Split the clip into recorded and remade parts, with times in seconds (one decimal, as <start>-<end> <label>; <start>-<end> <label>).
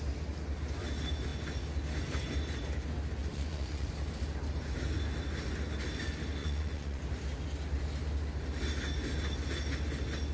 0.0-3.2 recorded; 3.2-3.9 remade; 3.9-6.4 recorded; 6.4-7.0 remade; 7.0-10.3 recorded